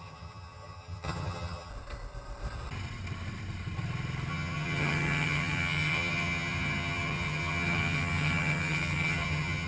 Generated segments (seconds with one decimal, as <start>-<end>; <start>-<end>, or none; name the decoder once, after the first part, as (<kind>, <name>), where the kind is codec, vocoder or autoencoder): 0.0-1.7 (vocoder, HiFi-GAN); 4.3-9.7